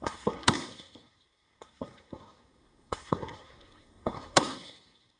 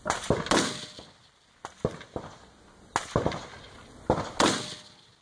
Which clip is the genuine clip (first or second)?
second